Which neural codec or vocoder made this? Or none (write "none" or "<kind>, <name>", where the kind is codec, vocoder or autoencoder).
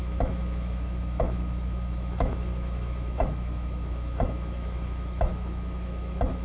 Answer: autoencoder, DAC-VAE